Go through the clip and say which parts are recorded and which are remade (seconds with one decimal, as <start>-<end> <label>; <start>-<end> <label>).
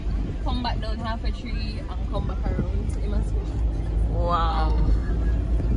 0.0-4.5 recorded; 4.5-5.1 remade; 5.1-5.8 recorded